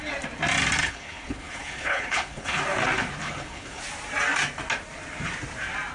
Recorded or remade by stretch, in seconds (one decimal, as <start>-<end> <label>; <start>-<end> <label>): 0.0-0.8 recorded; 0.8-2.6 remade; 2.6-3.2 recorded; 3.2-3.8 remade; 3.8-5.9 recorded